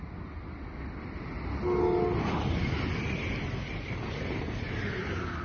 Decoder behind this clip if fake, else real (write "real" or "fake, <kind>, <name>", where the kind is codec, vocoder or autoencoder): real